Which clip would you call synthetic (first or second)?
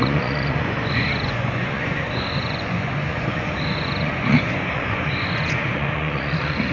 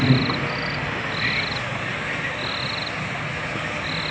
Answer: first